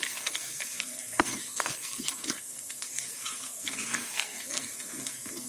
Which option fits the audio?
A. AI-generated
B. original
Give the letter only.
A